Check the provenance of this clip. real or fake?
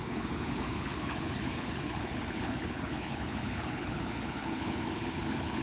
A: fake